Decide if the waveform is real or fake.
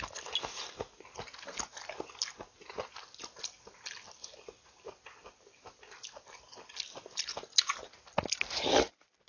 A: real